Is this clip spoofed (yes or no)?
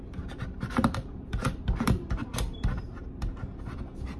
yes